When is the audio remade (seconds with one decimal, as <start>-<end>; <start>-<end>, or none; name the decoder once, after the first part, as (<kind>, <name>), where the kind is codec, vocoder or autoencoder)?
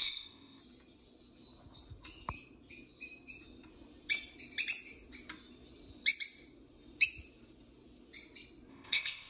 0.0-0.6 (codec, ZipCodec); 8.7-9.3